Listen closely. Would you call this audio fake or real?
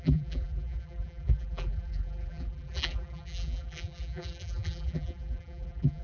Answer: fake